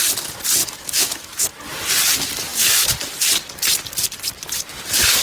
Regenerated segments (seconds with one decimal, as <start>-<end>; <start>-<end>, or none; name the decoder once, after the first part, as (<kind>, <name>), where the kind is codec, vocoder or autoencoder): 0.6-1.6 (autoencoder, DAC-VAE)

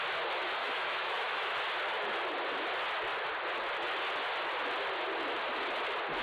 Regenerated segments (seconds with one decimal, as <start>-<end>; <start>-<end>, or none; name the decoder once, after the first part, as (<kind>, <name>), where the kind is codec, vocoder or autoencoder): 0.6-1.6 (autoencoder, DAC-VAE)

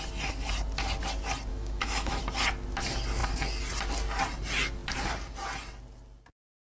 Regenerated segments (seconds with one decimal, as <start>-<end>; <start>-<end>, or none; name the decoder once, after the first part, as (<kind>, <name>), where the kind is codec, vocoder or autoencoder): 1.5-2.2 (autoencoder, DAC-VAE)

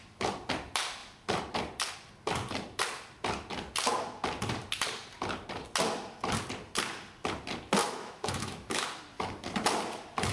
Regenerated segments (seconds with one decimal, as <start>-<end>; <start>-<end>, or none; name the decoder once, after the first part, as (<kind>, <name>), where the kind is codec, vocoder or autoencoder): 7.8-8.8 (autoencoder, DAC-VAE)

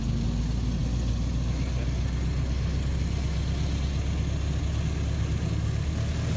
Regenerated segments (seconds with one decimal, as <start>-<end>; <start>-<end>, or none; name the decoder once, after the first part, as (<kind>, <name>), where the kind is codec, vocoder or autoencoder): none

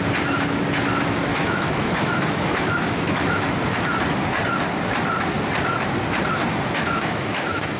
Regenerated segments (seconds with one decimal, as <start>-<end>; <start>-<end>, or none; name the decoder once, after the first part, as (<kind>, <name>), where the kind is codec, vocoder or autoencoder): 1.3-3.5 (autoencoder, DAC-VAE); 6.5-7.8

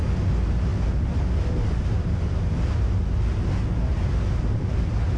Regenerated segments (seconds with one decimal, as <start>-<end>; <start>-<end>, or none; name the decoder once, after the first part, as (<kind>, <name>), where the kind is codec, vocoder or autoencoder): none